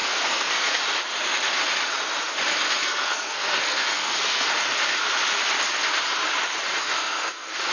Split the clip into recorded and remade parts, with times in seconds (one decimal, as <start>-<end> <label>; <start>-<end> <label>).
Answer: 0.0-0.8 remade; 0.8-2.8 recorded; 2.8-4.5 remade; 4.5-6.8 recorded; 6.8-7.7 remade